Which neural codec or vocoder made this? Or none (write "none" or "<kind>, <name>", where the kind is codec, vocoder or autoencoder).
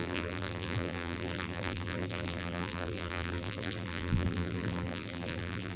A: vocoder, BigVGAN v2